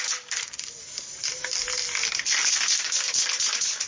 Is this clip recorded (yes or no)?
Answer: yes